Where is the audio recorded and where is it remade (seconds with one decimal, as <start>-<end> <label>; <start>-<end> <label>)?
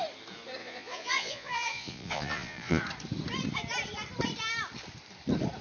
0.0-0.6 recorded; 0.6-2.8 remade; 2.8-5.6 recorded